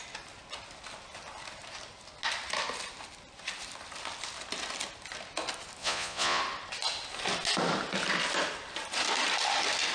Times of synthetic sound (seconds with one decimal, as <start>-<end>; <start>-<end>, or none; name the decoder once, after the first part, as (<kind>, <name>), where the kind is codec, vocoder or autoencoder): 5.8-6.4 (vocoder, Vocos)